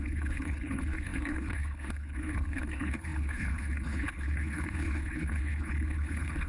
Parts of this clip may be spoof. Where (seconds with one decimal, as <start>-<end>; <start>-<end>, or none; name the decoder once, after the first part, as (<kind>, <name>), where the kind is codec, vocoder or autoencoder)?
0.0-6.5 (codec, HILCodec)